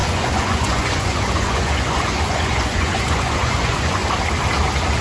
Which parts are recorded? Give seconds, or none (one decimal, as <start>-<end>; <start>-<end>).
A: 4.0-5.0